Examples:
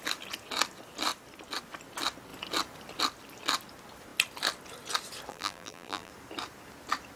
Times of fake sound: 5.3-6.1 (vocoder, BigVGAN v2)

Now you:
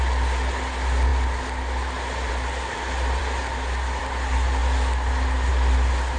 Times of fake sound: none

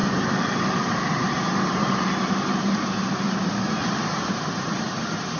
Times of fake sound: 0.0-3.8 (vocoder, BigVGAN v2); 4.3-5.4

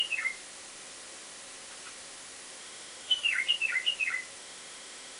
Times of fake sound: 2.6-3.4 (autoencoder, DAC-VAE); 4.4-5.2

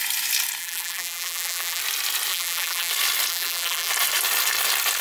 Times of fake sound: 0.6-1.8 (vocoder, BigVGAN v2); 2.3-2.9; 3.3-3.9

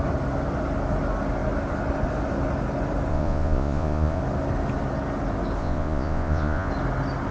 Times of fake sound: 3.1-4.2 (vocoder, Vocos); 5.6-6.7